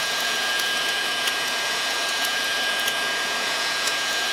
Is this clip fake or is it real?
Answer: fake